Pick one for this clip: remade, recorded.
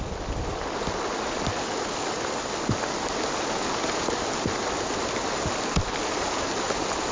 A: recorded